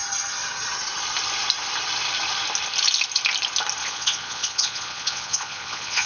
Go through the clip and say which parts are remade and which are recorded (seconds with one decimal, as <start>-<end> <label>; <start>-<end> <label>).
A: 0.0-3.8 recorded; 3.8-6.1 remade